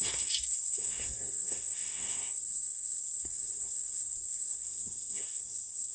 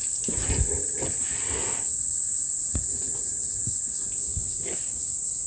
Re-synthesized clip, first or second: first